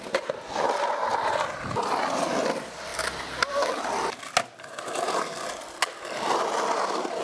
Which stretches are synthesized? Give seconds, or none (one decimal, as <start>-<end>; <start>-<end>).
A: none